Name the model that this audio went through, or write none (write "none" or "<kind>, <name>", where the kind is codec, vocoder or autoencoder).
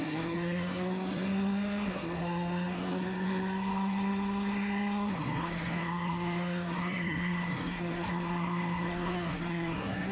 codec, SNAC